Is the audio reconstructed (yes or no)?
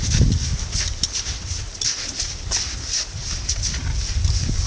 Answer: no